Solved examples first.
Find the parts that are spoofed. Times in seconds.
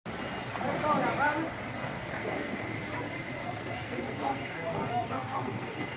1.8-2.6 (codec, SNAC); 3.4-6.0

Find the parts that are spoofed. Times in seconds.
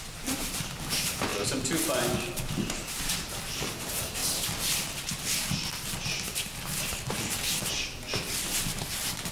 0.0-1.3 (vocoder, BigVGAN v2); 2.3-4.2